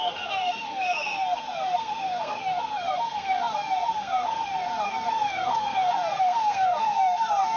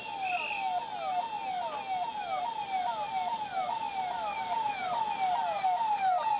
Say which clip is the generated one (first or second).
first